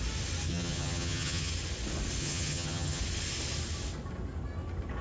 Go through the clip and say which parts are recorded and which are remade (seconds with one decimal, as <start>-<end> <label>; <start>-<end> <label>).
0.0-0.5 recorded; 0.5-1.5 remade; 1.5-2.2 recorded; 2.2-3.0 remade; 3.0-5.0 recorded